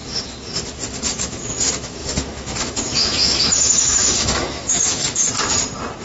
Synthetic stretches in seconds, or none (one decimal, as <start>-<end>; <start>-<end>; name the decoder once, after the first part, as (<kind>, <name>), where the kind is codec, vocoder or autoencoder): 1.0-5.2 (autoencoder, DAC-VAE)